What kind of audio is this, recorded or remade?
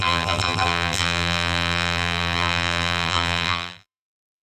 remade